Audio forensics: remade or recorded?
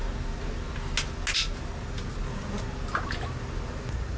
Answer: recorded